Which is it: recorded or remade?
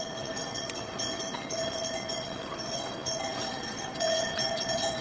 remade